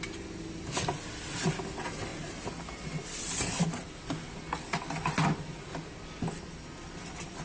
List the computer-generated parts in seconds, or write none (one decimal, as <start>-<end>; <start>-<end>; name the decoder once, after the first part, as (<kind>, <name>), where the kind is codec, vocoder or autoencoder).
none